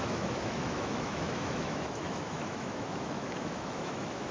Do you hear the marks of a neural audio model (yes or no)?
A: yes